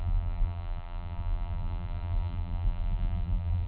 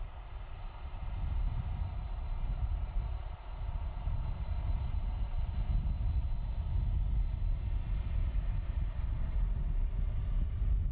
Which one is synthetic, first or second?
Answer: first